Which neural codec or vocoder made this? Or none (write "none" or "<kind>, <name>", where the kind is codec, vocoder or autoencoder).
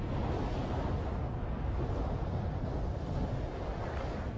none